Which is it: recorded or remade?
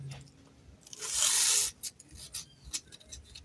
recorded